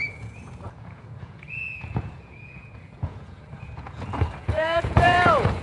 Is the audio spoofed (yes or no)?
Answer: yes